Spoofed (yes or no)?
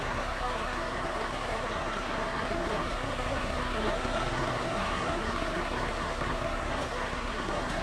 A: yes